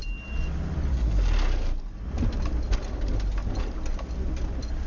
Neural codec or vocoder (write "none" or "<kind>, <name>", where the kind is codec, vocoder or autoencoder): none